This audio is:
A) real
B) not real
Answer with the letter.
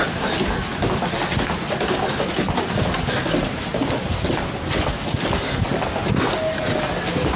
A